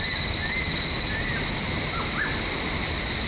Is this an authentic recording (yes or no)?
yes